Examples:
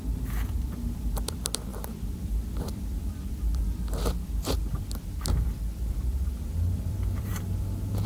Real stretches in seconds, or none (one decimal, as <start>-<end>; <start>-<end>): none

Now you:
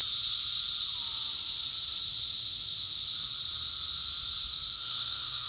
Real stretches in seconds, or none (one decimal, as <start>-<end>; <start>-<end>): 0.0-4.5

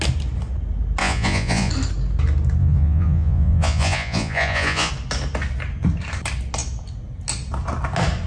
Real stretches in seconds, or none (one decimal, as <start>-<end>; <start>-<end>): 0.0-1.0; 1.7-2.6; 4.9-8.3

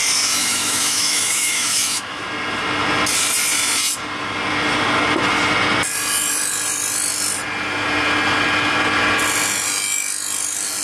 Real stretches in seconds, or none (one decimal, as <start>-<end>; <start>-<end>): 0.0-0.4; 2.2-10.8

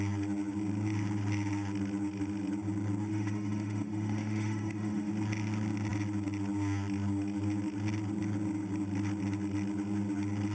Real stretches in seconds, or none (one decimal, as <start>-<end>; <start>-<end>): 0.0-3.1; 5.1-10.5